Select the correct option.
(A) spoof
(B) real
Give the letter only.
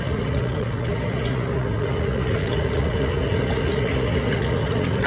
A